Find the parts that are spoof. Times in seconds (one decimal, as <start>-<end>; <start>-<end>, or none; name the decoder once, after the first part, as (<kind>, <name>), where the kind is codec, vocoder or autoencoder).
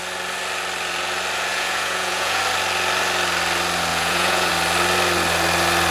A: 1.5-2.4 (vocoder, Vocos); 3.9-4.5